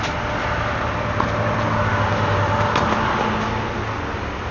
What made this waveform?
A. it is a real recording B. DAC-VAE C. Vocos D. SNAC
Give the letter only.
A